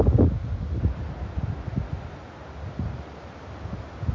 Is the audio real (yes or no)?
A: yes